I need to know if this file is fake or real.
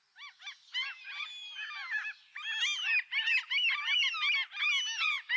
real